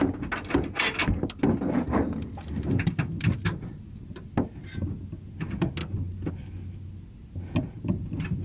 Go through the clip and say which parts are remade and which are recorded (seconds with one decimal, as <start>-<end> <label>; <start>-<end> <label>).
0.0-5.8 recorded; 5.8-6.3 remade; 6.3-8.4 recorded